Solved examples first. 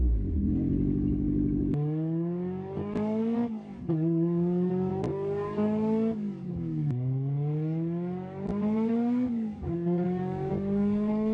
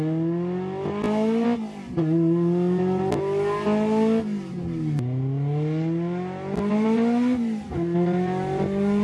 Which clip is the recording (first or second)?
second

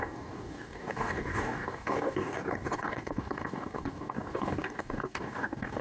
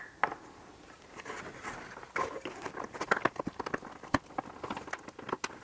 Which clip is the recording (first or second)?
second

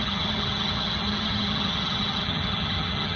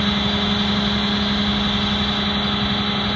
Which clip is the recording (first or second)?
second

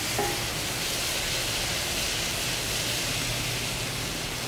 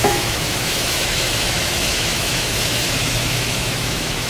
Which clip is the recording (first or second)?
first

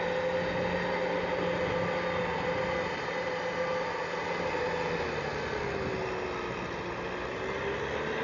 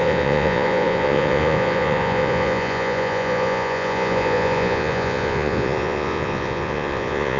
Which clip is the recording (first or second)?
first